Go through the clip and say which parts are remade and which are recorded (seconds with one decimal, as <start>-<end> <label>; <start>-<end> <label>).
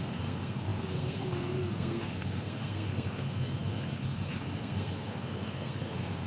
0.0-6.3 remade